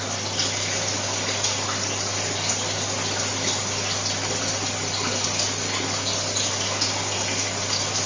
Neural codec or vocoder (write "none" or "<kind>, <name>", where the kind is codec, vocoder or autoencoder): none